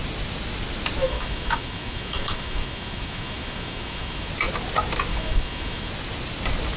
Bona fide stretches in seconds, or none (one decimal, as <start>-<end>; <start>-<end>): 0.0-1.0; 4.3-5.1; 5.9-6.8